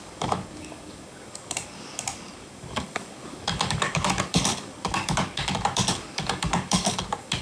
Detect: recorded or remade remade